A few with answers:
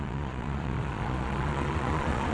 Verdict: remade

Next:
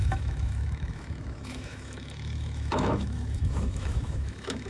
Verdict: remade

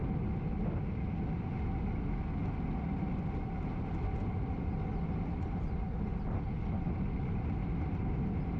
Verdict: recorded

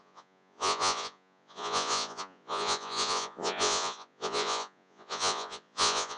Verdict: remade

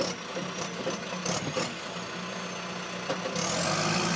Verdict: recorded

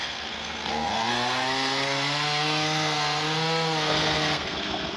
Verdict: remade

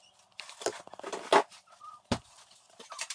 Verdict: recorded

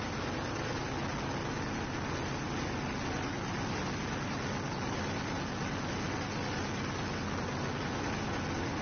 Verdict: recorded